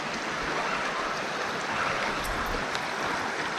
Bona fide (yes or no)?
yes